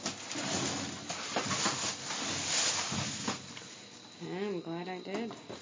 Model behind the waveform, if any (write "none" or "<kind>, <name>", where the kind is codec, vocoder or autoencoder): none